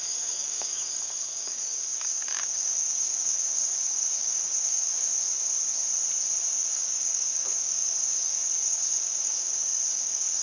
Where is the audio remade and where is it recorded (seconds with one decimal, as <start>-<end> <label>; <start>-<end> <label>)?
0.0-5.1 remade; 5.1-6.6 recorded; 6.6-10.4 remade